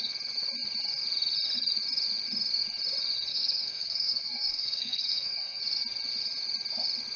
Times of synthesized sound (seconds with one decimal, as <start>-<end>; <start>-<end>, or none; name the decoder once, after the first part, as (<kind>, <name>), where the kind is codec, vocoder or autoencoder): 3.3-5.6 (codec, SNAC)